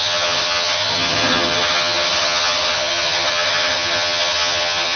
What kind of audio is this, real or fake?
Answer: fake